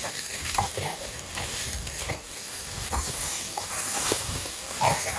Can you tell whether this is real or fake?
fake